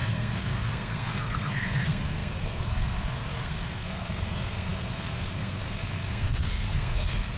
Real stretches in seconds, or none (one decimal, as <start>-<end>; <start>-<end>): none